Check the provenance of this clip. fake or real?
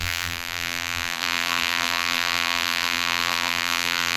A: fake